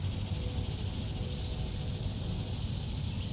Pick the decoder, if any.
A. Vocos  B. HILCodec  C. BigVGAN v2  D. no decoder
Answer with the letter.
D